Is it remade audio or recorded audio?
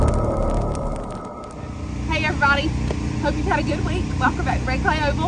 recorded